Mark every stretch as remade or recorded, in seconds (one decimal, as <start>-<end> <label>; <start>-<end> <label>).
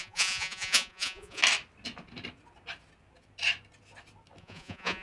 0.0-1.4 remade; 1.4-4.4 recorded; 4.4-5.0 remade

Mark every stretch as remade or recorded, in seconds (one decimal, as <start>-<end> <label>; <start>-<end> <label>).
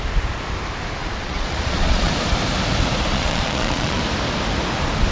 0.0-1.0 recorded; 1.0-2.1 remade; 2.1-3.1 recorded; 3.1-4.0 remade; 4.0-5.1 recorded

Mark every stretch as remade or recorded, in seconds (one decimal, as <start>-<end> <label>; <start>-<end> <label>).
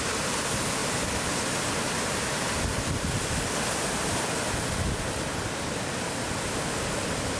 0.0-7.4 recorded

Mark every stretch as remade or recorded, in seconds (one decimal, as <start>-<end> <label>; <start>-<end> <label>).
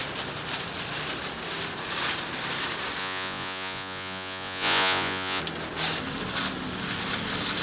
0.0-3.0 recorded; 3.0-5.4 remade; 5.4-7.6 recorded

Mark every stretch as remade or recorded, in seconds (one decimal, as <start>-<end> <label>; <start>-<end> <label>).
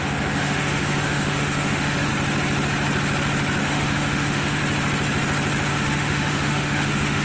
0.0-2.1 remade; 2.1-3.6 recorded; 3.6-4.6 remade; 4.6-5.7 recorded; 5.7-7.2 remade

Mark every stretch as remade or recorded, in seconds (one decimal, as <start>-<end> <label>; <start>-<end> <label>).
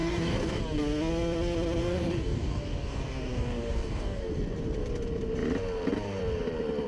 0.0-0.6 remade; 0.6-1.8 recorded; 1.8-4.3 remade; 4.3-6.9 recorded